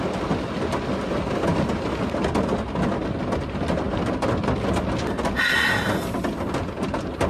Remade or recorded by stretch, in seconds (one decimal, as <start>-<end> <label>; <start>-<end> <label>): 0.0-7.3 recorded